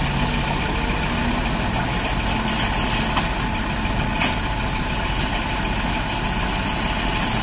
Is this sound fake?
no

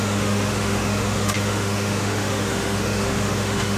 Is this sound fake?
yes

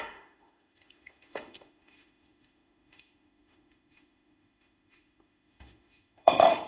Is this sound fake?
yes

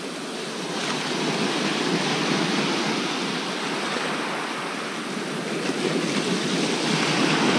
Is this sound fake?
no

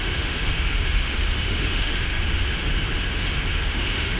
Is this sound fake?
yes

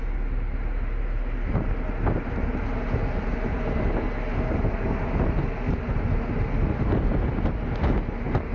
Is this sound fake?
no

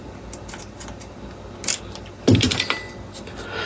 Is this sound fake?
no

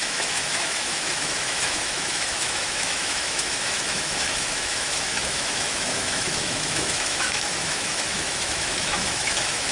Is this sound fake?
yes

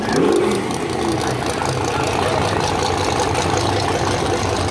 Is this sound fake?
no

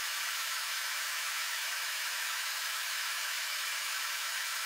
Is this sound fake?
yes